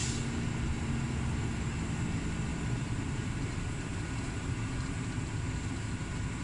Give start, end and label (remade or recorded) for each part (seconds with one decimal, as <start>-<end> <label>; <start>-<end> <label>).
0.0-2.5 recorded; 2.5-5.4 remade; 5.4-6.4 recorded